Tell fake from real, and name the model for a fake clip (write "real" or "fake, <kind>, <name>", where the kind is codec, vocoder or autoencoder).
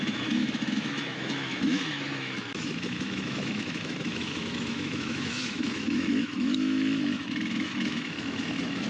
fake, autoencoder, DAC-VAE